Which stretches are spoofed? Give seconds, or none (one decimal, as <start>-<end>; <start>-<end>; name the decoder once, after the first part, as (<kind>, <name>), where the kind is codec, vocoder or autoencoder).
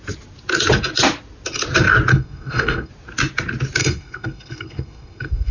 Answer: 2.1-2.9 (codec, SNAC); 3.8-5.5